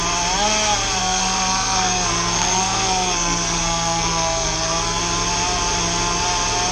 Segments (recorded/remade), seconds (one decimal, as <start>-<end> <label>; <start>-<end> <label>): 0.0-1.0 recorded; 1.0-5.0 remade; 5.0-6.7 recorded